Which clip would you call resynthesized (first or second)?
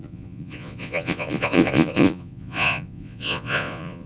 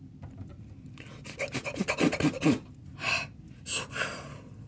first